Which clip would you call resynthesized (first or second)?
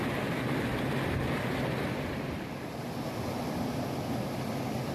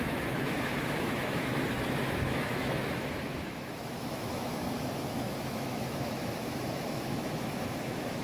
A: second